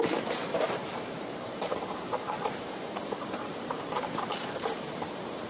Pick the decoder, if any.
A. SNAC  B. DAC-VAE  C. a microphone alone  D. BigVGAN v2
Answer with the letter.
D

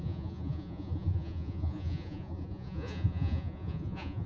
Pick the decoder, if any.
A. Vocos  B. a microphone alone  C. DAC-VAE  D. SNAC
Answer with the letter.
A